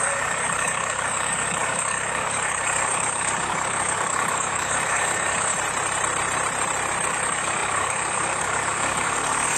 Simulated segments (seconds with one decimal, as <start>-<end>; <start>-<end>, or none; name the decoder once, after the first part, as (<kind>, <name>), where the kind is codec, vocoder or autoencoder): 0.0-5.5 (codec, DAC); 7.1-9.6